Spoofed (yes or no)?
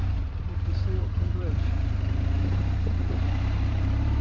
yes